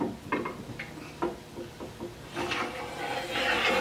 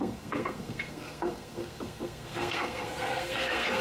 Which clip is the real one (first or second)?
first